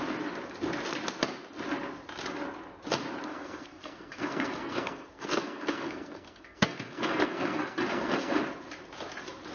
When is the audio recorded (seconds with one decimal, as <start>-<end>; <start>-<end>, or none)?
0.0-3.3; 8.4-9.5